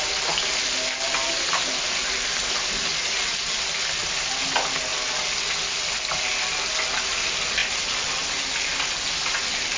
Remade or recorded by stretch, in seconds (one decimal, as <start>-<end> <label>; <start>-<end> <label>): 0.0-9.8 recorded